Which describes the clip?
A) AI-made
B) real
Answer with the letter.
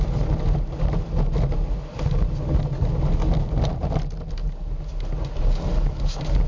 B